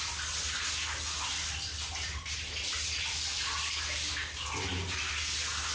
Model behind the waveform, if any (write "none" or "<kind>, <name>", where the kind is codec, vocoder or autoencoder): none